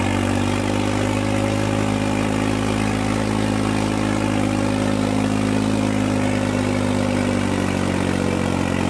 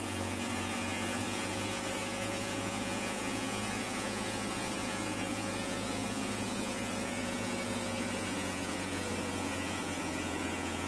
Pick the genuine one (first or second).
first